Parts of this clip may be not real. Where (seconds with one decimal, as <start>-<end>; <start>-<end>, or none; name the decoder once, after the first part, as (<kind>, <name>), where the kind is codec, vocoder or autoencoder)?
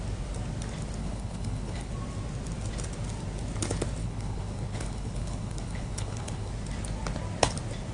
1.0-1.9 (codec, HILCodec); 4.0-6.5